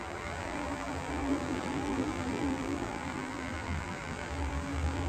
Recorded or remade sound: remade